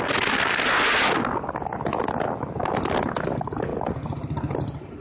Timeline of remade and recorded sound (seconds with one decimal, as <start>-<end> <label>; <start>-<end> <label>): 0.0-5.0 recorded